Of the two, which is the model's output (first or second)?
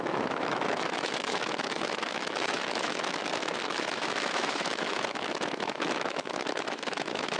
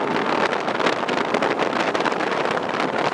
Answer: first